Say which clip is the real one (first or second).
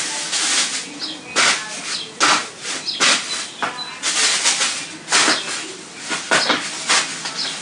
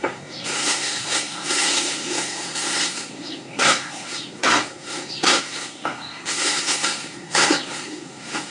first